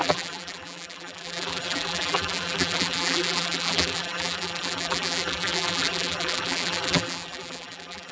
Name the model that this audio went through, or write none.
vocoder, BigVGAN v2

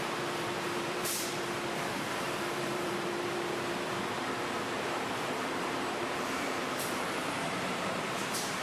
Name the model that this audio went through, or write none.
vocoder, BigVGAN v2